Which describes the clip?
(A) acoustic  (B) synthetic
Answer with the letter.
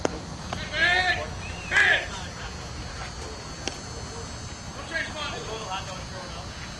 A